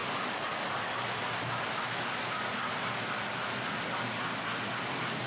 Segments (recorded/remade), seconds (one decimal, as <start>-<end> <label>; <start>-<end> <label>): 0.0-5.3 recorded